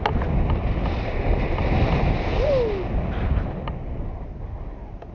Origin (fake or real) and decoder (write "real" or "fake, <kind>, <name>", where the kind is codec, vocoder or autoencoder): real